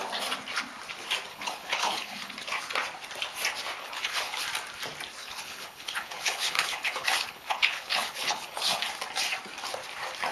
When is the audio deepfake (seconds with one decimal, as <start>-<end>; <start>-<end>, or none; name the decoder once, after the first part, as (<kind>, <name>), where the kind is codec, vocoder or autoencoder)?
1.3-2.3 (codec, HILCodec); 3.8-4.4; 5.2-8.9